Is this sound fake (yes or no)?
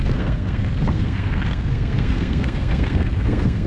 yes